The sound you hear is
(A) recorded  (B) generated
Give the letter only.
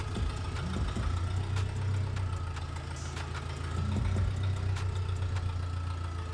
A